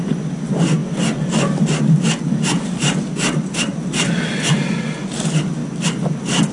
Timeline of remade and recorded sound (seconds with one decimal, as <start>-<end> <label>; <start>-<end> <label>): 0.0-6.5 recorded